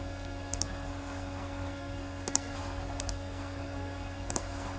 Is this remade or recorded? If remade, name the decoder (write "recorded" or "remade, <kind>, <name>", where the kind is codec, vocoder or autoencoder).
remade, codec, SNAC